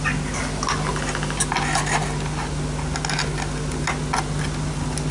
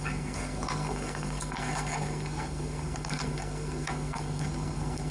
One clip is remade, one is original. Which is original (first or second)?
first